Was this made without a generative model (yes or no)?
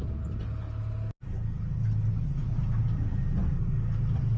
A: yes